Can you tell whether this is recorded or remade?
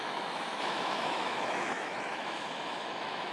remade